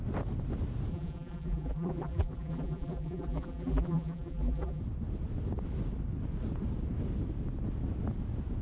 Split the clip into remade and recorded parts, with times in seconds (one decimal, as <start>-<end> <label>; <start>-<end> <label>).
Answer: 0.0-0.9 recorded; 0.9-4.8 remade; 4.8-8.6 recorded